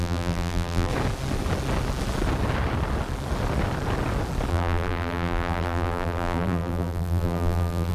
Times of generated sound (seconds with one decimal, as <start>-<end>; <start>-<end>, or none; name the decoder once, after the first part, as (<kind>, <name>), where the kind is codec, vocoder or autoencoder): 0.0-0.9 (vocoder, BigVGAN v2); 4.5-7.9